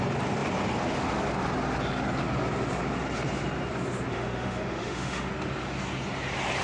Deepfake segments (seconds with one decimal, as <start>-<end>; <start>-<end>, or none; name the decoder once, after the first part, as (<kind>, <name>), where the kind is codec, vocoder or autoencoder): 4.1-5.3 (autoencoder, DAC-VAE)